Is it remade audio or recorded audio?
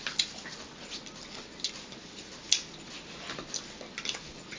recorded